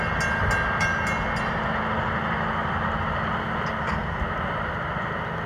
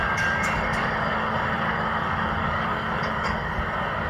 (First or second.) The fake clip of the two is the second